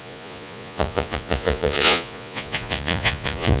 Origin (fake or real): fake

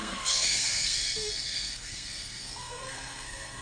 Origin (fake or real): fake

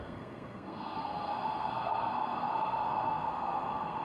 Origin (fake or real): fake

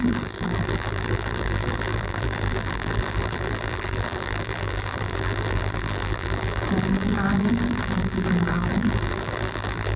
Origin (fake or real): fake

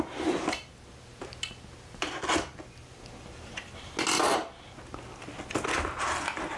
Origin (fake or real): real